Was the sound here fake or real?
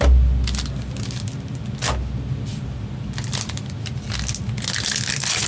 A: real